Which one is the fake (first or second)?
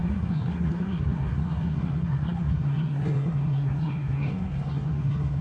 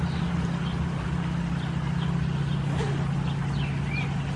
first